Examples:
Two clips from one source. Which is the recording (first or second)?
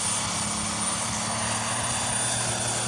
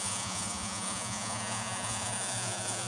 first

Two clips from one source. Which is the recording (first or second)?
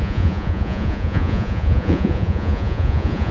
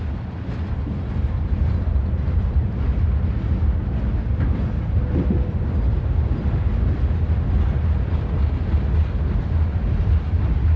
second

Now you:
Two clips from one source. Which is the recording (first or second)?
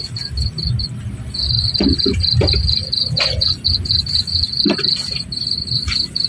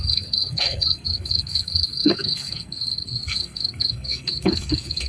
first